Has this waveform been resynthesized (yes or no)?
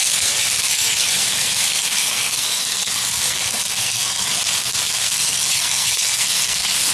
yes